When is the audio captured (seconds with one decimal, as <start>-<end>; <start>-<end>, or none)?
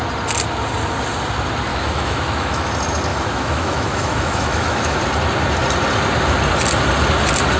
0.0-1.7; 2.7-3.1; 5.0-7.6